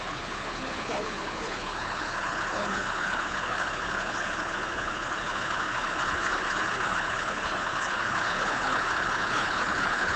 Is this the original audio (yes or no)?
no